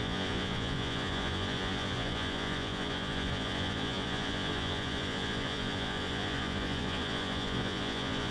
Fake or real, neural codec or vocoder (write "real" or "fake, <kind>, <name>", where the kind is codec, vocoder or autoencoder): fake, vocoder, Vocos